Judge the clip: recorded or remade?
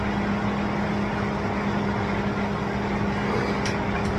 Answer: recorded